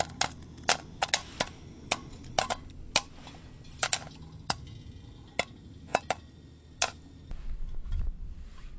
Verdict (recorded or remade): recorded